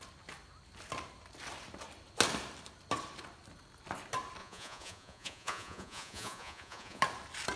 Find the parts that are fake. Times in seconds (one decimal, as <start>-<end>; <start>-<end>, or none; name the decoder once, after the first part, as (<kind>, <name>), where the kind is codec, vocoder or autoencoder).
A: 4.4-7.0 (vocoder, Vocos)